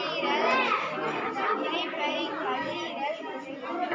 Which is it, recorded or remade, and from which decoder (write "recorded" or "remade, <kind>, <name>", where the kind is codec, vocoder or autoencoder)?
recorded